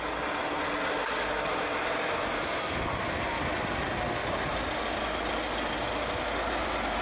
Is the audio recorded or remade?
recorded